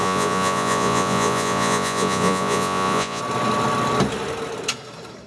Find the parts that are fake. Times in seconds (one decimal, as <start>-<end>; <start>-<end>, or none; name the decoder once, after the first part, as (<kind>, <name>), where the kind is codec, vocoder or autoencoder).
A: 0.0-3.2 (vocoder, Vocos)